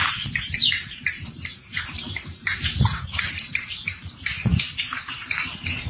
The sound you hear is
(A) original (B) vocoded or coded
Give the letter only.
B